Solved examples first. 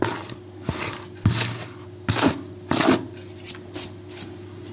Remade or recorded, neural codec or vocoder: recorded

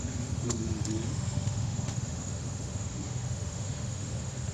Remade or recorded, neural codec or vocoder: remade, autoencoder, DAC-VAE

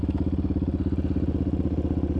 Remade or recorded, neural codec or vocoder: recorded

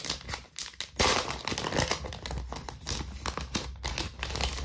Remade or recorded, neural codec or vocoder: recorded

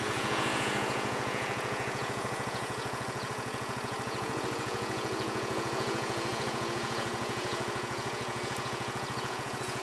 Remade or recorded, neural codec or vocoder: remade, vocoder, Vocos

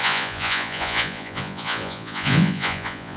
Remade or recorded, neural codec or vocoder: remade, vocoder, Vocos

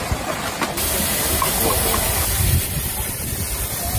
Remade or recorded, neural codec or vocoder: recorded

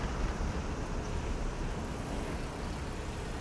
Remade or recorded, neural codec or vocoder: recorded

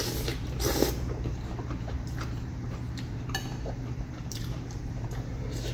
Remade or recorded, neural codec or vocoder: remade, vocoder, BigVGAN v2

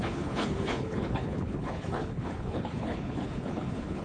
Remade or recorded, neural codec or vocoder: remade, codec, HILCodec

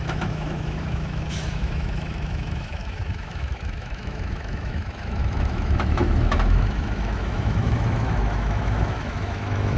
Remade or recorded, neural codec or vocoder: remade, autoencoder, DAC-VAE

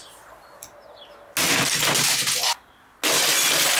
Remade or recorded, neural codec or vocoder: recorded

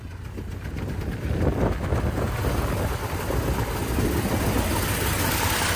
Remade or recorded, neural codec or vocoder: recorded